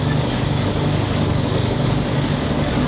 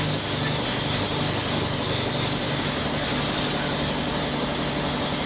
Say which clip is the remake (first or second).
first